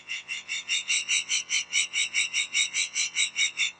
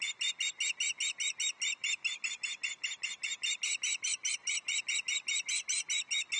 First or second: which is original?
second